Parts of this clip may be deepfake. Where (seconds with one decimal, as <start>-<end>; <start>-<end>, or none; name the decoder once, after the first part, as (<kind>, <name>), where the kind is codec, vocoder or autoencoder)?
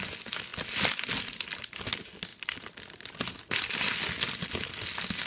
none